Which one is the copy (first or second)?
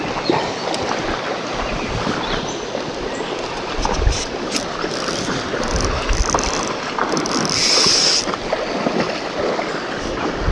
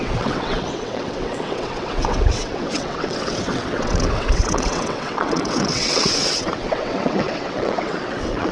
second